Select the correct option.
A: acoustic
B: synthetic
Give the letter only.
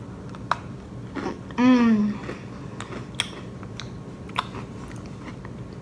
A